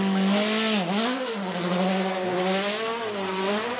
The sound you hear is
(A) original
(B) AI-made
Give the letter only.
A